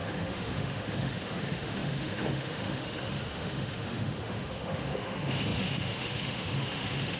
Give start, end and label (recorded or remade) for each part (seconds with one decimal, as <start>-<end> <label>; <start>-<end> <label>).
0.0-7.2 remade